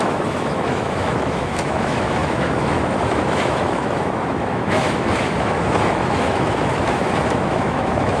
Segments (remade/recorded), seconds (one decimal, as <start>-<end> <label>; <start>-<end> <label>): 0.0-8.2 remade